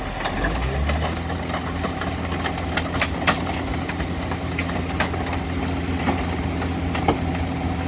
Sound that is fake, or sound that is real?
real